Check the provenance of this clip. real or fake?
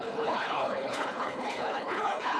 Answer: fake